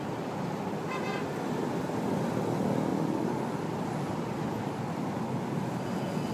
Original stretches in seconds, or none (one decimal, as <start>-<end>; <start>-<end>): 0.0-6.3